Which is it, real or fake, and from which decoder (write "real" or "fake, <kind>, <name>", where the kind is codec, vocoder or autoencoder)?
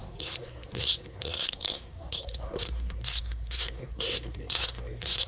fake, codec, SNAC